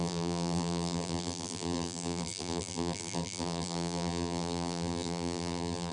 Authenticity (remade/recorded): remade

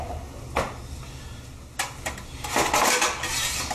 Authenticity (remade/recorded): recorded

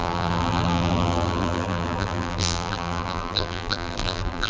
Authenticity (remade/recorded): remade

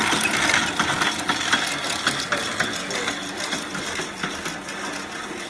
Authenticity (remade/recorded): recorded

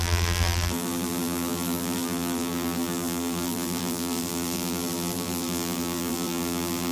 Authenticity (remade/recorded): remade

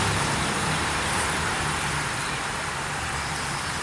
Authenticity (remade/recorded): remade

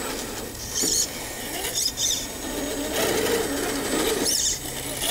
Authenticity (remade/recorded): recorded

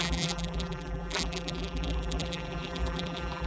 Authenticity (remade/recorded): remade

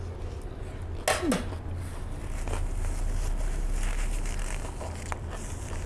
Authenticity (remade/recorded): recorded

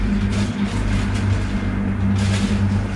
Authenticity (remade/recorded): recorded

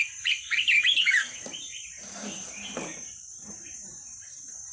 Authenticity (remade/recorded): remade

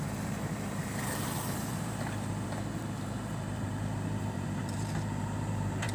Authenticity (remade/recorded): remade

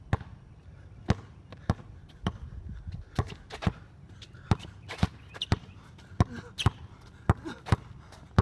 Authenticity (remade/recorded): recorded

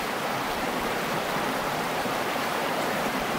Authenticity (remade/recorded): remade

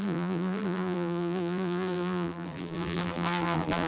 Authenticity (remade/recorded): remade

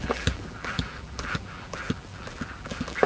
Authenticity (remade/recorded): remade